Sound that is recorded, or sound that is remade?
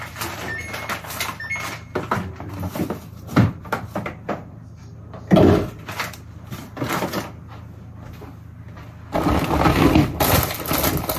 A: recorded